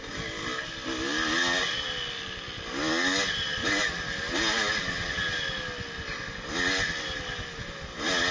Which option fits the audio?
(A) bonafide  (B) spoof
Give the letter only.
A